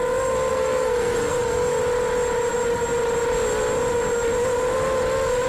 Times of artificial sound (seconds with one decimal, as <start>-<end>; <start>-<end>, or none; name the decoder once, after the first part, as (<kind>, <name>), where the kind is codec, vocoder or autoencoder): 0.5-1.8 (codec, SNAC)